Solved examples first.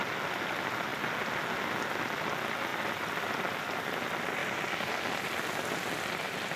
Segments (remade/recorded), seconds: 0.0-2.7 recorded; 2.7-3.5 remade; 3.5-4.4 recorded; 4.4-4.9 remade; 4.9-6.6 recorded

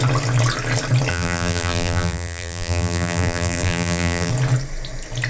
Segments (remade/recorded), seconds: 0.0-1.1 recorded; 1.1-4.3 remade; 4.3-5.3 recorded

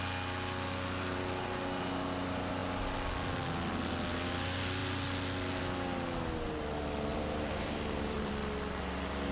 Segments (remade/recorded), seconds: 0.0-7.1 recorded; 7.1-8.3 remade; 8.3-9.3 recorded

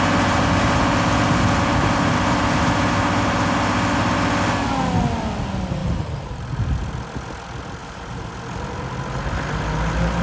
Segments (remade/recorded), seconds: 0.0-5.8 recorded; 5.8-6.8 remade; 6.8-7.8 recorded; 7.8-8.3 remade; 8.3-10.2 recorded

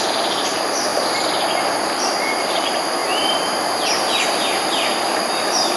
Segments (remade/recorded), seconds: 0.0-0.9 remade; 0.9-2.5 recorded; 2.5-5.8 remade

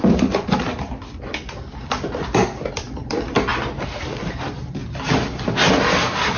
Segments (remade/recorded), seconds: 0.0-4.8 remade; 4.8-5.7 recorded; 5.7-6.4 remade

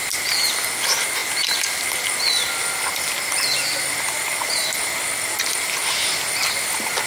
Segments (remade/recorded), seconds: 0.0-7.1 recorded